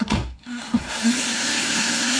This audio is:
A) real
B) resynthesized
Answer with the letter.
B